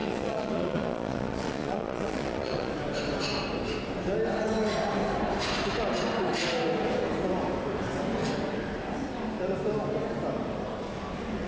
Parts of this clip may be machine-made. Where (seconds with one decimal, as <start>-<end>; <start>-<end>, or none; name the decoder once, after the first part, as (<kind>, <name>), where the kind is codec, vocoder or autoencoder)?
0.0-2.7 (vocoder, Vocos)